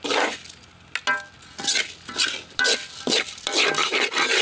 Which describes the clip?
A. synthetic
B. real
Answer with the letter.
B